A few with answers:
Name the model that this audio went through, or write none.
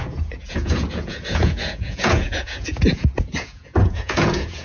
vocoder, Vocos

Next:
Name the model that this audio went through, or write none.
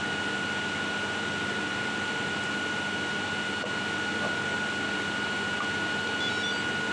none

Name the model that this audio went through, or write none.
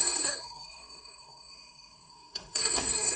codec, SNAC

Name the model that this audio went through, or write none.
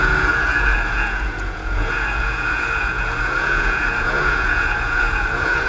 vocoder, Vocos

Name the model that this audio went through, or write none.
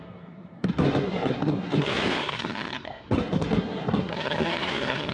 codec, SNAC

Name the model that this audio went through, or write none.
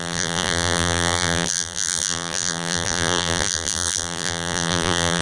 vocoder, BigVGAN v2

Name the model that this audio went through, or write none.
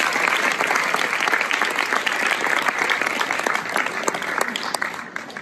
none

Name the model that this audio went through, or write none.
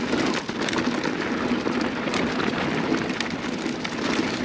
none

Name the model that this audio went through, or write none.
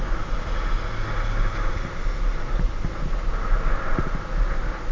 none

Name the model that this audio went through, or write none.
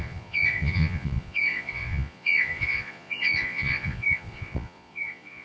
vocoder, Vocos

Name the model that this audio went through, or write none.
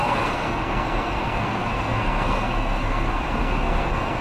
codec, SNAC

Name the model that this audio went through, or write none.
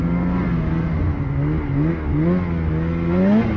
none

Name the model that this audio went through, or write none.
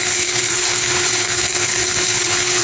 codec, HILCodec